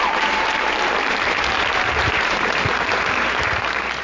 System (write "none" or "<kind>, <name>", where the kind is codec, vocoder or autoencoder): vocoder, BigVGAN v2